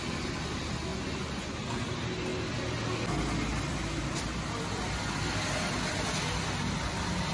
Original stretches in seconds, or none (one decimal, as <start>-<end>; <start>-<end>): 0.0-0.9; 1.5-7.3